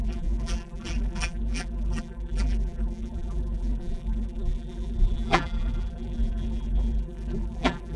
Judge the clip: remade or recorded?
remade